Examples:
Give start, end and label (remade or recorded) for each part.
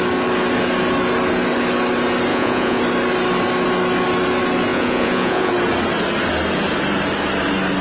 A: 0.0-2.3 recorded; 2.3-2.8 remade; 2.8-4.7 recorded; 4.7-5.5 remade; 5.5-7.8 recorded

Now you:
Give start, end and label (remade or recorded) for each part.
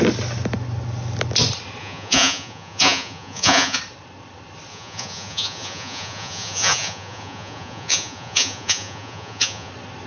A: 0.0-1.8 recorded; 1.8-3.8 remade; 3.8-4.7 recorded; 4.7-9.7 remade; 9.7-10.1 recorded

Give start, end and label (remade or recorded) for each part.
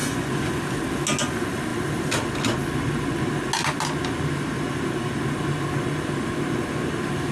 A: 0.0-0.6 remade; 0.6-7.3 recorded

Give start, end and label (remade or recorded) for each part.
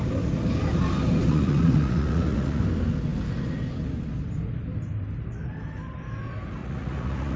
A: 0.0-1.3 recorded; 1.3-2.6 remade; 2.6-6.6 recorded; 6.6-7.4 remade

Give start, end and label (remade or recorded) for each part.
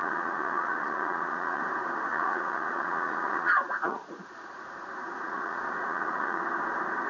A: 0.0-1.6 remade; 1.6-2.1 recorded; 2.1-6.4 remade; 6.4-7.1 recorded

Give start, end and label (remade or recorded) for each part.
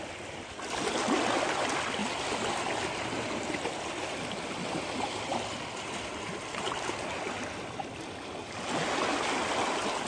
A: 0.0-10.1 recorded